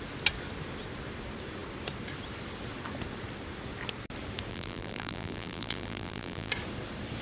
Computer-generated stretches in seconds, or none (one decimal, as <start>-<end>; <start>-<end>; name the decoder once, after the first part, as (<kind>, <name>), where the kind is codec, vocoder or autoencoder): 4.5-6.5 (vocoder, BigVGAN v2)